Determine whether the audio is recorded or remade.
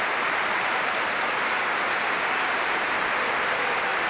recorded